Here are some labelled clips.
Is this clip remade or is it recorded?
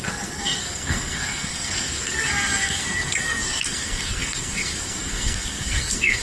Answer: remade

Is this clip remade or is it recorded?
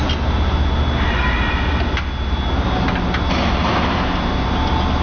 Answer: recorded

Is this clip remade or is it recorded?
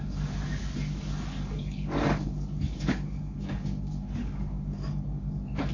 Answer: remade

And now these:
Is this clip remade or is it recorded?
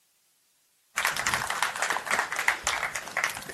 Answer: recorded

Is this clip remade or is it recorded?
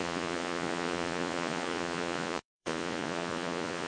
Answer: remade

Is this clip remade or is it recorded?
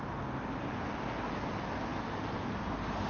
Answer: recorded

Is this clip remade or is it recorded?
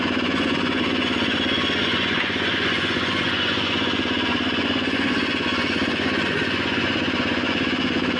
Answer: remade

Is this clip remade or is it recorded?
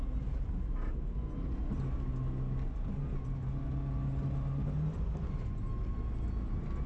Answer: recorded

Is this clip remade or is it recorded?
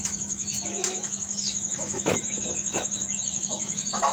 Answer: remade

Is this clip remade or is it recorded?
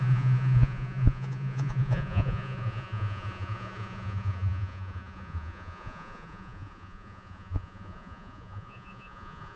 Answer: remade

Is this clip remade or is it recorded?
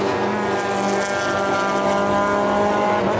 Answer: recorded